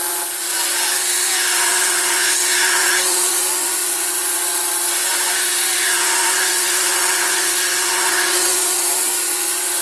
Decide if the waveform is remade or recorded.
remade